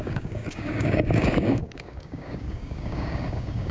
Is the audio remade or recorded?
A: remade